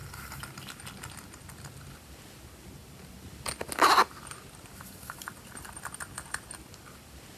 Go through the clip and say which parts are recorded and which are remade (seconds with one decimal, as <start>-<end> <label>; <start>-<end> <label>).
0.0-7.4 recorded